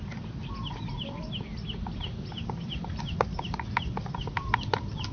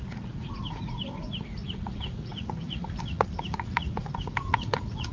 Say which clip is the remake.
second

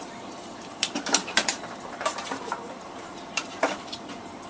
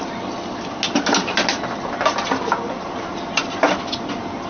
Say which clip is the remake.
first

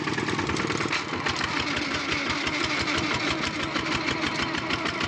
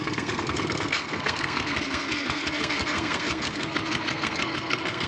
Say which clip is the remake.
second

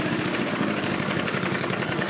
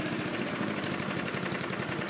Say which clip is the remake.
first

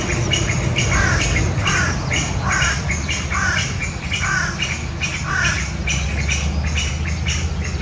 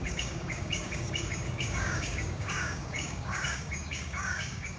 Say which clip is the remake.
second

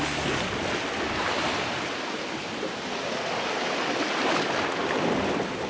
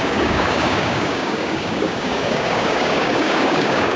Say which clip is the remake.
second